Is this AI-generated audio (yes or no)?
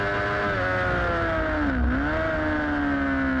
no